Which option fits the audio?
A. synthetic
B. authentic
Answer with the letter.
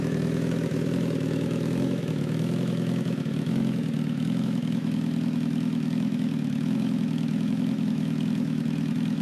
A